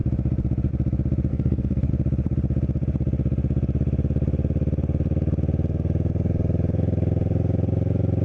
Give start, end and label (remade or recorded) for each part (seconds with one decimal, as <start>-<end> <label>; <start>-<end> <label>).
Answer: 0.0-1.3 recorded; 1.3-1.9 remade; 1.9-8.2 recorded